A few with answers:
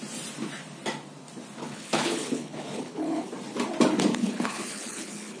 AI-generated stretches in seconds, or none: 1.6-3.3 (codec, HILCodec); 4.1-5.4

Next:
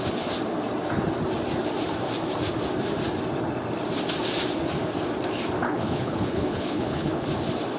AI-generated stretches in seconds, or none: 5.6-7.3 (codec, HILCodec)

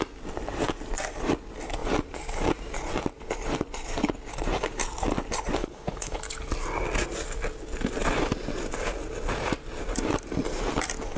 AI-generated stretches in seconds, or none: 5.6-6.2 (codec, HILCodec)

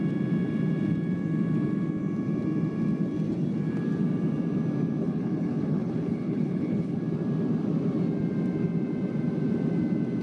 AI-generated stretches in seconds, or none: 5.0-7.0 (codec, HILCodec)

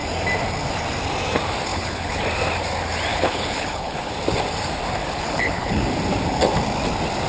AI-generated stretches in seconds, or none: 1.7-2.2 (codec, HILCodec); 3.1-4.1; 5.0-5.8

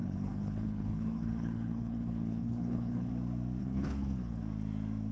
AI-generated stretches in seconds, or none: 0.0-3.1 (codec, HILCodec); 3.6-4.4

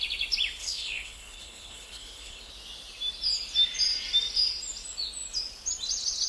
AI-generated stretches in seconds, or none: 0.6-2.5 (codec, HILCodec)